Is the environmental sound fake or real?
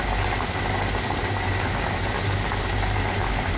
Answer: real